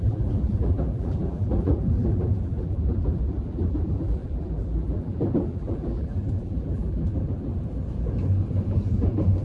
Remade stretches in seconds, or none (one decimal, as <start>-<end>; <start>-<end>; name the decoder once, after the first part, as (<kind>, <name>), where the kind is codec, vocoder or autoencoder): 0.0-7.5 (vocoder, BigVGAN v2); 8.7-9.4